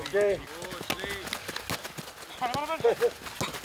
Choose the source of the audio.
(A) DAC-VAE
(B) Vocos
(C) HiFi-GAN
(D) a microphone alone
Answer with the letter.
D